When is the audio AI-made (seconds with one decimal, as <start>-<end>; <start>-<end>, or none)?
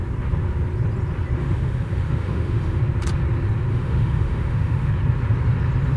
1.4-2.8; 3.7-4.9